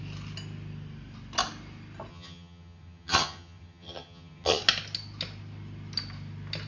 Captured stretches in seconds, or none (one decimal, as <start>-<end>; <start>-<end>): 0.0-2.1; 4.6-6.7